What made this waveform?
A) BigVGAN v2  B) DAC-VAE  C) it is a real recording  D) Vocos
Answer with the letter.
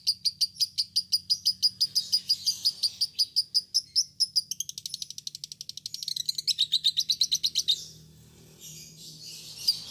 C